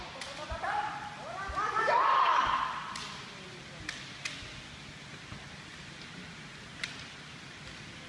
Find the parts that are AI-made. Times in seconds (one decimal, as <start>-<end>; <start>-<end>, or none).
5.7-7.3